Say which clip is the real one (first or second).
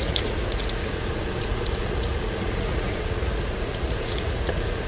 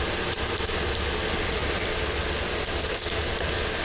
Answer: second